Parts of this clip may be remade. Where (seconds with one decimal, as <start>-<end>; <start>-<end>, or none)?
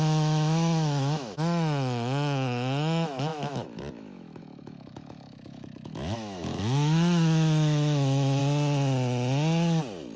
0.0-8.4